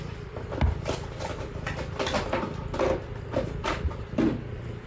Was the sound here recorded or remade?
recorded